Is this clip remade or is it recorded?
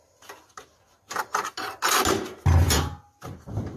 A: recorded